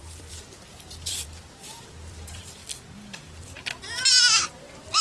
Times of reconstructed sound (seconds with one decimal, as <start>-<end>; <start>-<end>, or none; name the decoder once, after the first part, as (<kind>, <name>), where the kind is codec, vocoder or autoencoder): 0.0-2.6 (vocoder, BigVGAN v2); 4.5-5.0